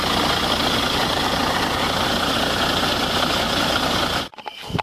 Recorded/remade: recorded